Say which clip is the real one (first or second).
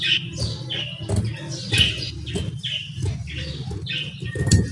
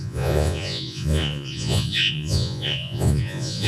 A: first